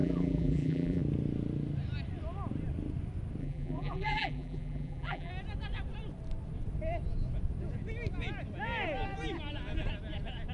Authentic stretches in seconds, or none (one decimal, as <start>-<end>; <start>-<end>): 1.0-3.4; 5.3-10.5